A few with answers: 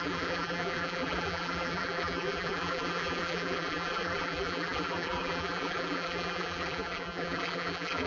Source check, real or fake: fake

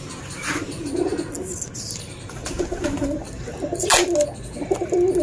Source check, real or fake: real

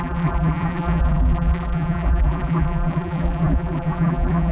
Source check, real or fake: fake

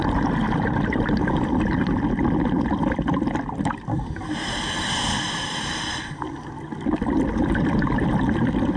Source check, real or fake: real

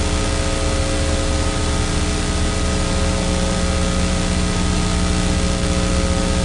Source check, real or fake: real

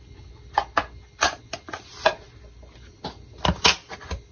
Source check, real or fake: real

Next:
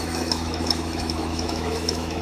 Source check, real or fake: fake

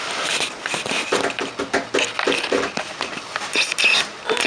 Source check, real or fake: real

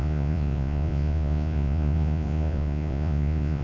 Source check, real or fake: fake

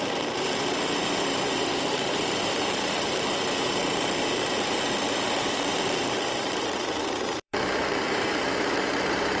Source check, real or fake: fake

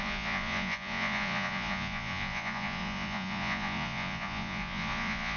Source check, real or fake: fake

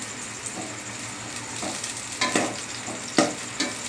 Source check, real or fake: real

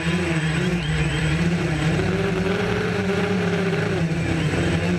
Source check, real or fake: fake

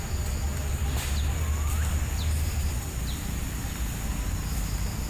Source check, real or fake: real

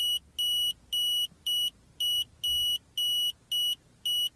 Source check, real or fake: real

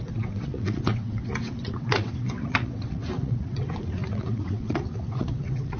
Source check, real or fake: fake